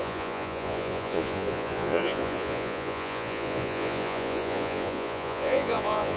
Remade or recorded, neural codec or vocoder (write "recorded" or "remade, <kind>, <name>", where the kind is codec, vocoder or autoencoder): remade, vocoder, Vocos